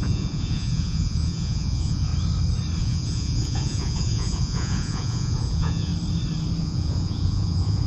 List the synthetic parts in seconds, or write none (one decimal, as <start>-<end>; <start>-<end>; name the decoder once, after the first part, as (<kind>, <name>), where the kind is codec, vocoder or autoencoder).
0.0-2.1 (vocoder, Vocos); 2.8-5.9; 6.6-7.9